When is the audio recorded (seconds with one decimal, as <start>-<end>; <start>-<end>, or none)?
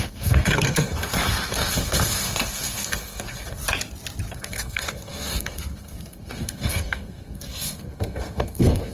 3.6-4.3